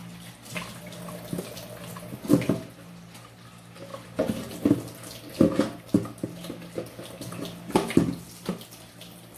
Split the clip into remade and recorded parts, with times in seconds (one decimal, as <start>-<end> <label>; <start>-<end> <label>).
0.0-9.4 recorded